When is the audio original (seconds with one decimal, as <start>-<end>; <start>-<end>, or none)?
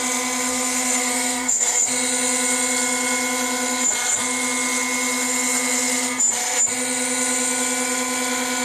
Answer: 0.0-0.5; 1.9-8.6